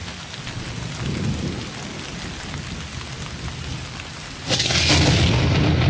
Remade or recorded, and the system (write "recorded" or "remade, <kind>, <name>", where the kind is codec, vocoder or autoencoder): recorded